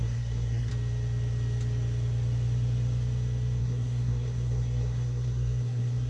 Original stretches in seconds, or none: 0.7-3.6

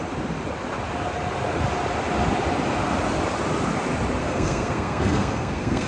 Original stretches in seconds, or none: 0.0-4.2

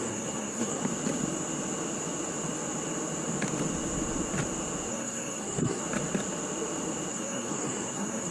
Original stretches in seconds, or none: 0.8-4.9; 5.8-7.1

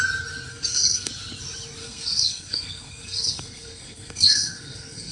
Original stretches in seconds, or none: 0.0-0.5; 1.1-1.8

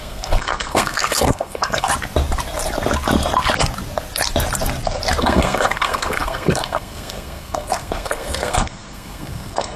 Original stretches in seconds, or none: 1.9-5.2

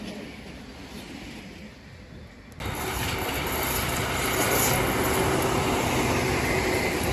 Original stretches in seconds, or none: 0.0-7.1